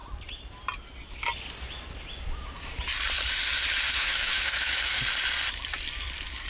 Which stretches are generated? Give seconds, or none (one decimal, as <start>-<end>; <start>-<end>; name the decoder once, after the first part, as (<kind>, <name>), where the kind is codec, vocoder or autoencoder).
3.9-5.0 (autoencoder, DAC-VAE)